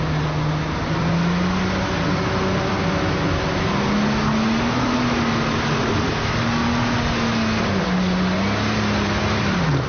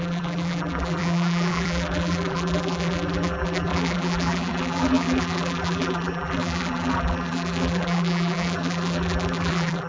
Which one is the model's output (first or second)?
second